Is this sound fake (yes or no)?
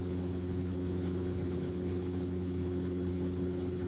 yes